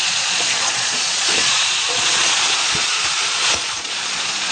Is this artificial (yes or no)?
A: yes